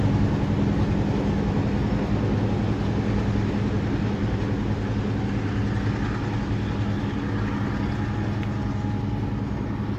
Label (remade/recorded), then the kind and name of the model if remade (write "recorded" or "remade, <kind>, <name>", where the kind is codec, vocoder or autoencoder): recorded